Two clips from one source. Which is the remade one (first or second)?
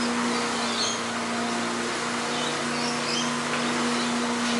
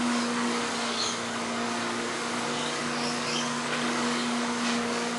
second